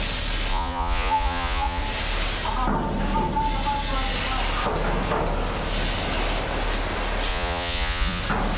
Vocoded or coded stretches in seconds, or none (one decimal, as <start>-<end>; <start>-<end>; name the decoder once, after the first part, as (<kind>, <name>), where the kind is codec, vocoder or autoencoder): 0.5-1.8 (vocoder, Vocos); 7.3-8.2

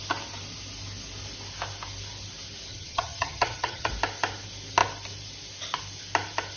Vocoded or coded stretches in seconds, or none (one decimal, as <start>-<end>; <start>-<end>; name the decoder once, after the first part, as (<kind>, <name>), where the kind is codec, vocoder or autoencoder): 2.7-3.9 (vocoder, HiFi-GAN)

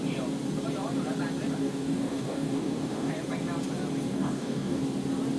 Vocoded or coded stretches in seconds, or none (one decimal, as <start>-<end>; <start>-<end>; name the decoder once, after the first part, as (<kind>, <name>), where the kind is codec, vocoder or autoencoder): 1.6-3.1 (codec, DAC); 4.1-4.8

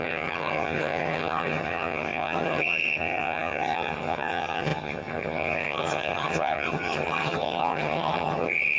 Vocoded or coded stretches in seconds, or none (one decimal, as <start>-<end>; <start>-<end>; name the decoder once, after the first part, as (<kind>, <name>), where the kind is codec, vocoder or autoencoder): 0.0-8.8 (vocoder, HiFi-GAN)

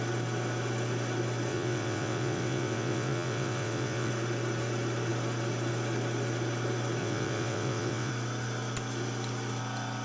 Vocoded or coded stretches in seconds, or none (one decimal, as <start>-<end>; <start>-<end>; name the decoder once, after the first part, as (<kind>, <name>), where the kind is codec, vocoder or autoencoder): 1.5-4.1 (vocoder, WaveNeXt); 7.0-8.1

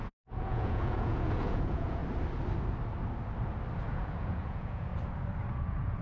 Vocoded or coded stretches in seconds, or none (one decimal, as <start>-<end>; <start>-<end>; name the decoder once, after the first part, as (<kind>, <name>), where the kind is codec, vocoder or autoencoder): 0.0-2.0 (vocoder, Vocos); 3.9-4.9; 5.5-6.0

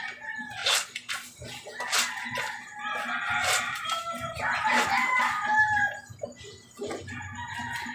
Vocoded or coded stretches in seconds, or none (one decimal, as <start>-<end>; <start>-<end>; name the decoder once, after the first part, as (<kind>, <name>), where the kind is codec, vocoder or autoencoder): 3.4-4.8 (vocoder, BigVGAN v2)